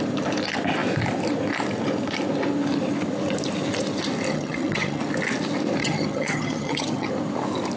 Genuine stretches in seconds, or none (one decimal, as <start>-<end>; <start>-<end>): 0.0-4.3; 5.0-5.8; 7.1-7.8